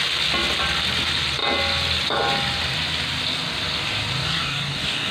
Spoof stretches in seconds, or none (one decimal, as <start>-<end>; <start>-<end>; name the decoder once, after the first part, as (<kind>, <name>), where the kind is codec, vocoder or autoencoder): 4.2-5.1 (codec, DAC)